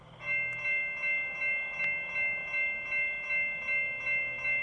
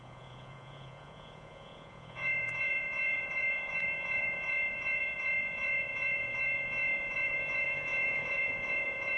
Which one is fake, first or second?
second